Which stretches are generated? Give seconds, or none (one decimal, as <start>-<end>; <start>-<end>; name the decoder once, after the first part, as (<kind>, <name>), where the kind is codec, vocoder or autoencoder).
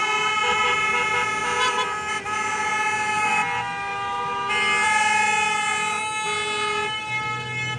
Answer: none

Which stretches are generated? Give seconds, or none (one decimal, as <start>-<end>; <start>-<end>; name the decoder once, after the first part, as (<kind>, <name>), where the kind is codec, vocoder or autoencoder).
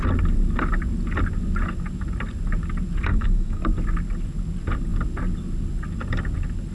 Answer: 3.1-3.6 (autoencoder, DAC-VAE)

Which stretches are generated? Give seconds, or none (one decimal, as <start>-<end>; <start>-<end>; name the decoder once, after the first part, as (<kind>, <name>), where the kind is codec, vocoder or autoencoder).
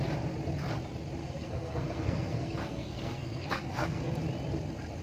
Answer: 1.2-4.2 (codec, SNAC)